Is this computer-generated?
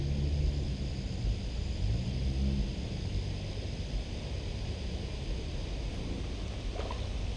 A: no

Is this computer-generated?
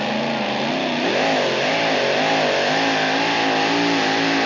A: no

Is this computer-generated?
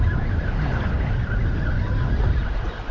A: no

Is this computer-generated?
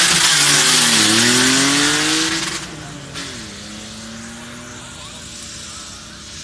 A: no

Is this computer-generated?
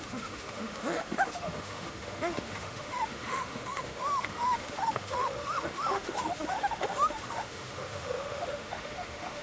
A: yes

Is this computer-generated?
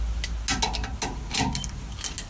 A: no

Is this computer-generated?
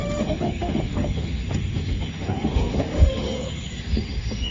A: yes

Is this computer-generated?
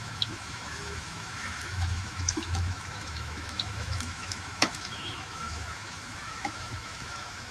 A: yes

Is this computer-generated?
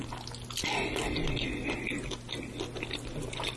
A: no